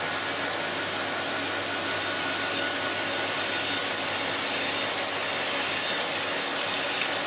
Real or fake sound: real